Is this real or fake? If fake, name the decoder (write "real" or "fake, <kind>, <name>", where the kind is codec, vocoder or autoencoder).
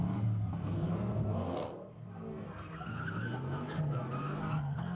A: fake, codec, SNAC